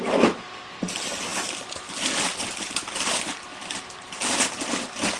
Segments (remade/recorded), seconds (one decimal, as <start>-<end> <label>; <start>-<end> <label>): 0.0-5.2 remade